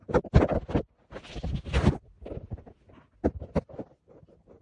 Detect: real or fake real